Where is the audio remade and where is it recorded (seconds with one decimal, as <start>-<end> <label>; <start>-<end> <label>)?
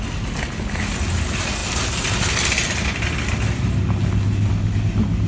0.0-5.3 recorded